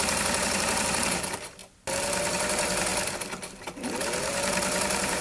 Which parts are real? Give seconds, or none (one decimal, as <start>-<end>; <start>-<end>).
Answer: 1.6-2.3; 2.9-4.2